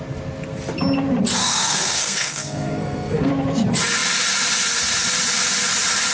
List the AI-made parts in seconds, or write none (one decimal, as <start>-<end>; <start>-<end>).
1.4-3.3